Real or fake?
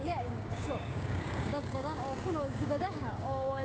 fake